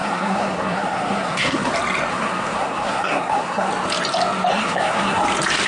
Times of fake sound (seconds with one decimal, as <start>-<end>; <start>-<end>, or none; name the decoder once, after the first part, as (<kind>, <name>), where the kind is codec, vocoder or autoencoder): 0.0-1.7 (codec, SNAC); 2.1-3.7; 4.5-5.2